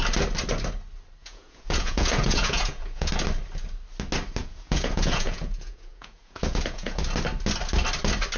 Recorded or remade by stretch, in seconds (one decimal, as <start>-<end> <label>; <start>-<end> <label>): 0.0-1.2 recorded; 1.2-3.1 remade; 3.1-4.4 recorded; 4.4-7.0 remade; 7.0-8.4 recorded